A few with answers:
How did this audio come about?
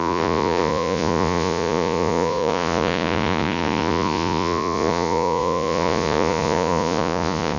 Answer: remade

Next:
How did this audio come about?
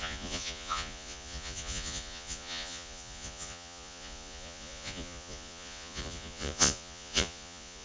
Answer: remade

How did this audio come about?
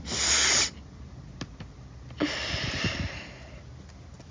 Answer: recorded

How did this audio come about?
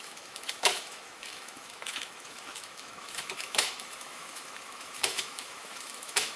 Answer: remade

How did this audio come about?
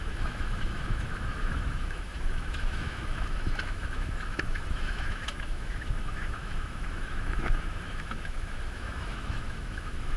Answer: remade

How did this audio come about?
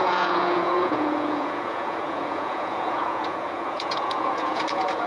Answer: remade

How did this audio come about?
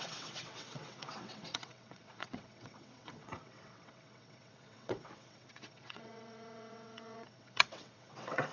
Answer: remade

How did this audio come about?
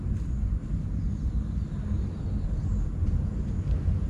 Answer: recorded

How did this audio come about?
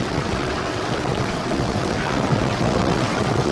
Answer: remade